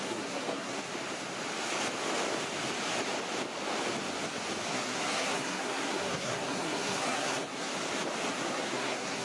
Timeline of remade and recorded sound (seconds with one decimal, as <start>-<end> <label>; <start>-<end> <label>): 0.0-0.9 remade; 0.9-4.7 recorded; 4.7-7.7 remade; 7.7-8.3 recorded; 8.3-9.2 remade